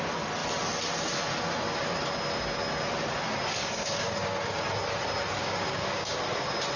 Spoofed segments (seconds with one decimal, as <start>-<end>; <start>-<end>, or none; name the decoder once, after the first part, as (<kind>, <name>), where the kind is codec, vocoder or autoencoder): 3.6-4.6 (codec, DAC); 5.4-6.2